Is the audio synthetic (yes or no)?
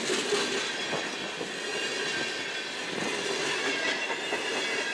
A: no